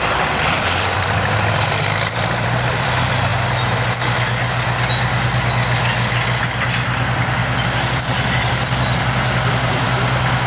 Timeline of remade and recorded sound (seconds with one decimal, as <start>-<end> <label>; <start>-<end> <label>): 0.0-3.3 remade; 3.3-6.6 recorded; 6.6-7.4 remade; 7.4-9.0 recorded; 9.0-10.5 remade